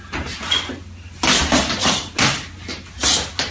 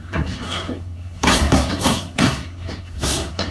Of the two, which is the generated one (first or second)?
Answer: second